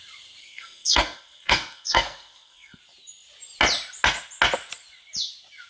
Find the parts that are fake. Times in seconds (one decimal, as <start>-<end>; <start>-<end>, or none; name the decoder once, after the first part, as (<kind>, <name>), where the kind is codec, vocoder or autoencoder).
0.4-2.8 (codec, SNAC)